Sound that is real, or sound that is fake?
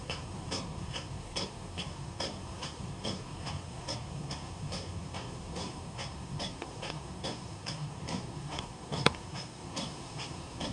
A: fake